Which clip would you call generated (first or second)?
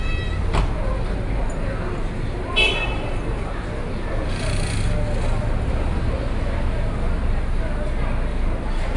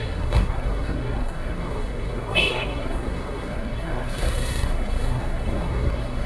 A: second